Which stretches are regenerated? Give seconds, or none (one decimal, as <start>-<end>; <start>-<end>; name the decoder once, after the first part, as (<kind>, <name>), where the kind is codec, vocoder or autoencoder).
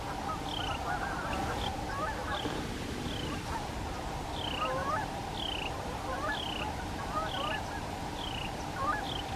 0.0-9.4 (vocoder, BigVGAN v2)